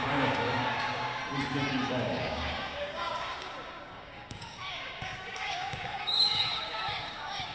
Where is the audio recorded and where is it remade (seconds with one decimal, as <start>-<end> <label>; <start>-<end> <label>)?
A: 0.0-1.2 remade; 1.2-1.9 recorded; 1.9-7.5 remade